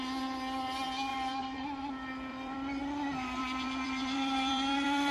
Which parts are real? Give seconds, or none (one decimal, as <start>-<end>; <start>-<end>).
0.0-1.1; 1.9-2.3; 2.8-3.4